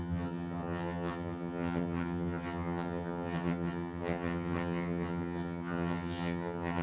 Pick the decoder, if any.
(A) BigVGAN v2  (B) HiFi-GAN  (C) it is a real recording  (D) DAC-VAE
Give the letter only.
B